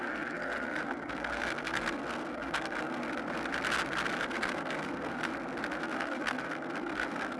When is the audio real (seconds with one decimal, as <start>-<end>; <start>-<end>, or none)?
3.0-4.2; 5.3-5.8